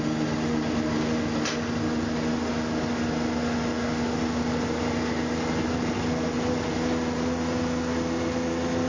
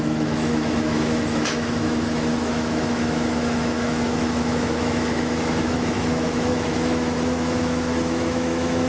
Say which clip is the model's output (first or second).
second